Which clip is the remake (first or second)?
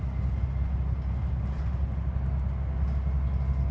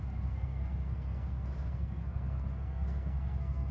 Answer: second